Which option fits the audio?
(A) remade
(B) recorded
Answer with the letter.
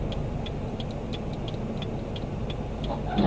B